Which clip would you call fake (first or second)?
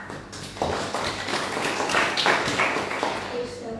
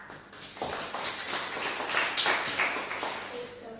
first